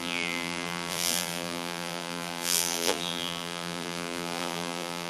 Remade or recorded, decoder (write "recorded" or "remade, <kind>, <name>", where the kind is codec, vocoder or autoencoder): remade, vocoder, BigVGAN v2